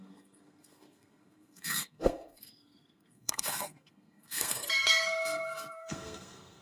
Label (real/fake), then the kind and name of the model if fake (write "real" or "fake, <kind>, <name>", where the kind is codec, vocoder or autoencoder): fake, codec, SNAC